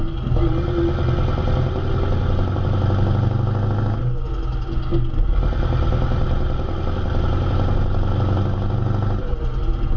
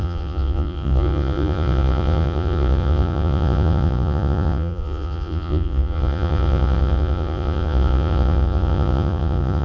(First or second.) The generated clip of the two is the second